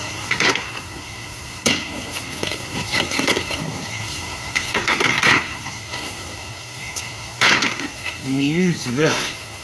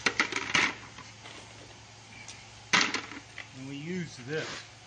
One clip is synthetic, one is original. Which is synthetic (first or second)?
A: first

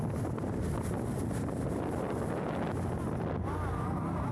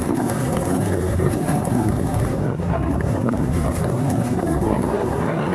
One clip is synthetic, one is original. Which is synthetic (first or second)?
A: second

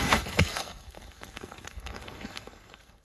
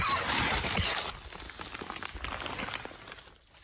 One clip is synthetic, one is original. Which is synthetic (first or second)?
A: first